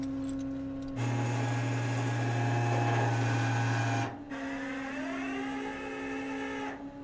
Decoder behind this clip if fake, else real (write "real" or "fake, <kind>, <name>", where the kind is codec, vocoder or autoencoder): real